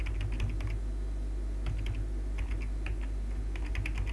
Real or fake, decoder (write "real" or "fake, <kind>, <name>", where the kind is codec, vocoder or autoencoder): real